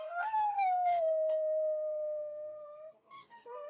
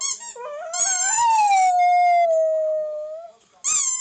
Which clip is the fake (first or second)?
first